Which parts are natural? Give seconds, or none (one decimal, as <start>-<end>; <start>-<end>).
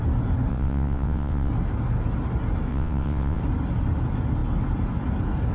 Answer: 0.0-0.5; 1.5-2.7; 3.4-5.5